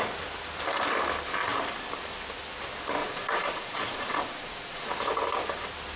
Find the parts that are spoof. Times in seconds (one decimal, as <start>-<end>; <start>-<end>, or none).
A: 3.0-4.9